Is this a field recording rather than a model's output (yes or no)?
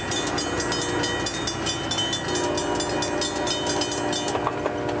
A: yes